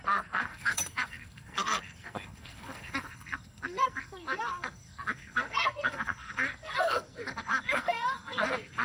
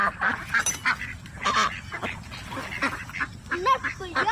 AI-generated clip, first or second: first